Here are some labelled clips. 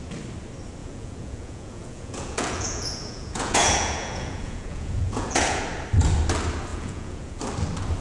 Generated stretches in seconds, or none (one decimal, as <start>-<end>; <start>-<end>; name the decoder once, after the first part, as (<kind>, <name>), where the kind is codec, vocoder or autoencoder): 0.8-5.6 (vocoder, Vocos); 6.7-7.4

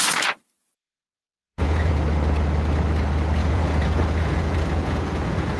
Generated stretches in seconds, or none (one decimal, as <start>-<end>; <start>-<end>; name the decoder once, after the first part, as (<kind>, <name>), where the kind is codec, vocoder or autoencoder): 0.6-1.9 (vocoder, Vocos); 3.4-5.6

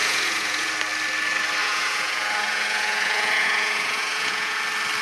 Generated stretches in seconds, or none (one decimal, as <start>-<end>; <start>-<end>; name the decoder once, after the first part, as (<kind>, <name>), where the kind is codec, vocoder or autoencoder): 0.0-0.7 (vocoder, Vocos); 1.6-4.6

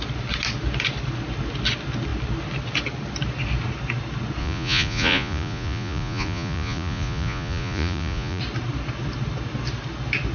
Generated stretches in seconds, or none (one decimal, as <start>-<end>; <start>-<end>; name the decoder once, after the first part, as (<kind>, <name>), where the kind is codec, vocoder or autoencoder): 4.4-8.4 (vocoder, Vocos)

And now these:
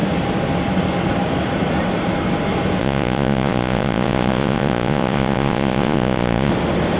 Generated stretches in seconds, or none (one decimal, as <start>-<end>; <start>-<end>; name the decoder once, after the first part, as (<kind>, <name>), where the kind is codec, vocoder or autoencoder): 2.8-6.5 (vocoder, Vocos)

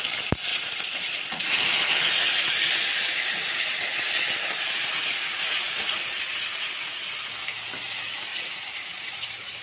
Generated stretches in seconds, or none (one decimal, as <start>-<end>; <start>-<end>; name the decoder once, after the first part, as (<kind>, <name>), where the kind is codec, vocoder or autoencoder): 0.5-1.5 (vocoder, Vocos); 5.3-7.1; 8.3-9.6

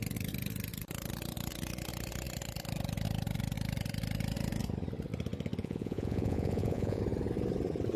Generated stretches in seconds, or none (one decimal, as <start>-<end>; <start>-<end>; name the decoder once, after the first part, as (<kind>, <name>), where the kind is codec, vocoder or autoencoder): 5.6-7.0 (vocoder, Vocos)